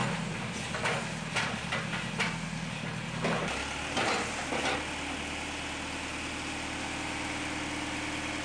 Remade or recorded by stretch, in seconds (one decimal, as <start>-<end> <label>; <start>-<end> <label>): 0.0-8.4 recorded